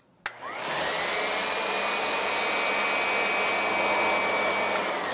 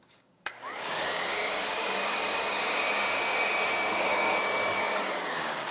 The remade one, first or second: second